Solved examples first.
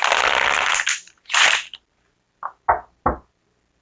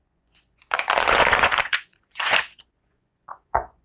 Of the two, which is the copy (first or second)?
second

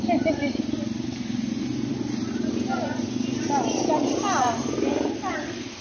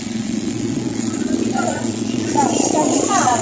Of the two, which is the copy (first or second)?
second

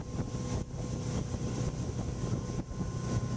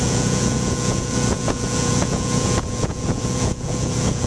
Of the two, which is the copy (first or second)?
second